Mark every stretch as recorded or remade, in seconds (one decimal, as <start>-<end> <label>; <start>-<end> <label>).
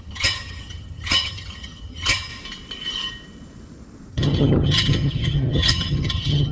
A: 0.0-2.3 remade; 2.3-4.1 recorded; 4.1-6.5 remade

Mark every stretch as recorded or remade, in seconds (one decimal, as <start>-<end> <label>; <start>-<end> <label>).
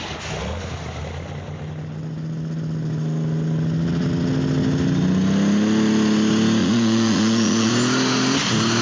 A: 0.0-6.6 recorded; 6.6-7.7 remade; 7.7-8.8 recorded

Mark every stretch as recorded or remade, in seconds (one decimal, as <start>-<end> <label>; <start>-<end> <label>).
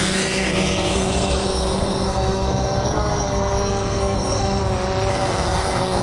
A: 0.0-4.6 remade; 4.6-5.1 recorded; 5.1-6.0 remade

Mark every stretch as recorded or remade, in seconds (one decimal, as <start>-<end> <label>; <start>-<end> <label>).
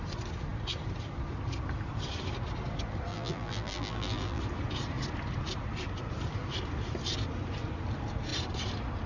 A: 0.0-3.1 recorded; 3.1-4.4 remade; 4.4-9.1 recorded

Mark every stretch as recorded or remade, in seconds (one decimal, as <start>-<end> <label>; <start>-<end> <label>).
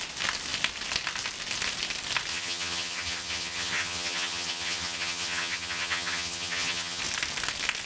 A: 0.0-2.3 recorded; 2.3-7.0 remade; 7.0-7.9 recorded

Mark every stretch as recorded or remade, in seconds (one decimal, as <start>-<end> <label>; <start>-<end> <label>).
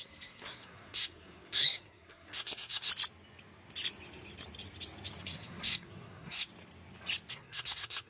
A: 0.0-2.9 remade; 2.9-5.2 recorded; 5.2-6.5 remade; 6.5-7.3 recorded; 7.3-8.1 remade